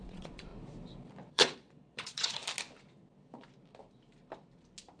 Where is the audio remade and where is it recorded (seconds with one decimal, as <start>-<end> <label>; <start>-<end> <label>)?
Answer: 0.0-0.5 remade; 0.5-1.3 recorded; 1.3-2.4 remade; 2.4-5.0 recorded

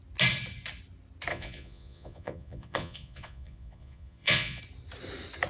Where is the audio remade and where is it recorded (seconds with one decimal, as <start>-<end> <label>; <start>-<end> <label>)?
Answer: 0.0-1.3 recorded; 1.3-4.6 remade; 4.6-5.5 recorded

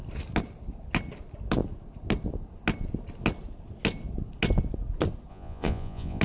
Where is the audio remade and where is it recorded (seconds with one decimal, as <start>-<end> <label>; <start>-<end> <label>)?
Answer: 0.0-5.3 recorded; 5.3-6.2 remade

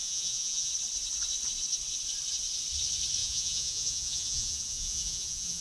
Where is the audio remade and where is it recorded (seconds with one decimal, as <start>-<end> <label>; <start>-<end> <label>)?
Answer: 0.0-0.7 remade; 0.7-3.2 recorded; 3.2-5.6 remade

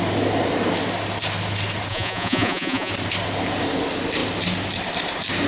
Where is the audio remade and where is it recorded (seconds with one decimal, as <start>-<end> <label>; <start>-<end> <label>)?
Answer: 0.0-1.9 recorded; 1.9-2.9 remade; 2.9-5.5 recorded

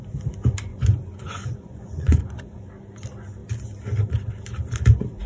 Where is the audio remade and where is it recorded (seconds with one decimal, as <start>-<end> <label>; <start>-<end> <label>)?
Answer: 0.0-0.7 recorded; 0.7-2.7 remade; 2.7-5.3 recorded

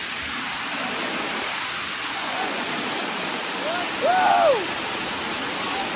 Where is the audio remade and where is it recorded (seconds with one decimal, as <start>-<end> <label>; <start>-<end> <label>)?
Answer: 0.0-2.2 recorded; 2.2-2.7 remade; 2.7-6.0 recorded